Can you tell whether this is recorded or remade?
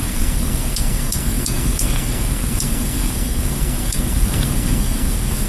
remade